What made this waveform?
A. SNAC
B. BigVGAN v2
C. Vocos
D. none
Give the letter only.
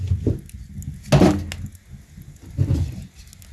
D